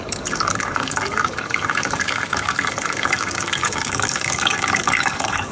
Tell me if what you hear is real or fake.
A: fake